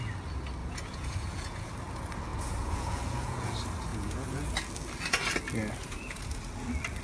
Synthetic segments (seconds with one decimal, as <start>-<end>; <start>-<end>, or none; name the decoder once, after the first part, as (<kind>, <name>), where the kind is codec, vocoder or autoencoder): 0.6-1.7 (vocoder, Vocos); 2.3-3.5; 3.9-4.5; 5.8-6.4